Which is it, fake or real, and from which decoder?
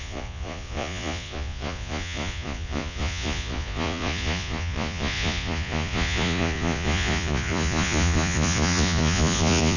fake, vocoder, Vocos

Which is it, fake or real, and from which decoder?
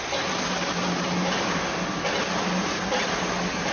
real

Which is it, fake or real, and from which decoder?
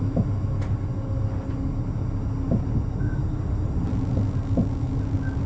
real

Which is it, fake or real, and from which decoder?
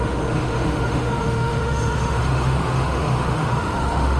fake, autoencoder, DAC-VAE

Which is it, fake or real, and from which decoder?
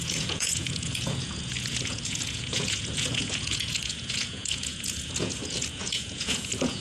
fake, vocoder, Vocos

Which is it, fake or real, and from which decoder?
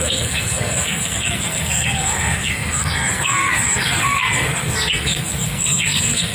fake, codec, SNAC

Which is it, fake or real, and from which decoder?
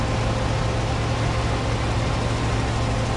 real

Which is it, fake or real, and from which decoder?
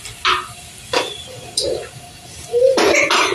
real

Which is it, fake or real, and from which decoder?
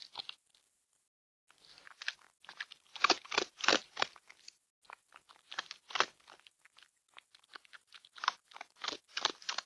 real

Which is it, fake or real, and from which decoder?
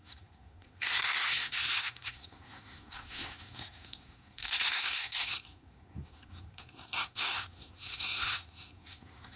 fake, codec, SNAC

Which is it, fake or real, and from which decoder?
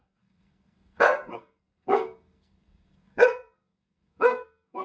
fake, codec, SNAC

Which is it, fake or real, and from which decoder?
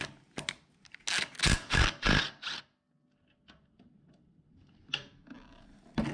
real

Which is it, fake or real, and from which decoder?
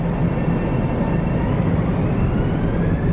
real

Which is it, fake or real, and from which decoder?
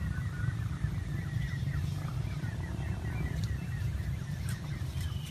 real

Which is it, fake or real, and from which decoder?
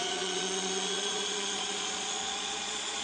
fake, vocoder, Vocos